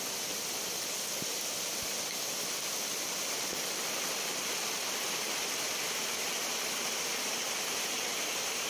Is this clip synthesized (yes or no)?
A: no